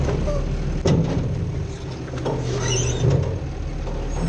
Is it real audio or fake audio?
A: real